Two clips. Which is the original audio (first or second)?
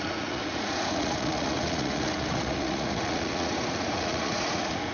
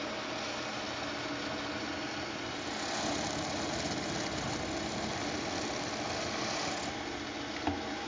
second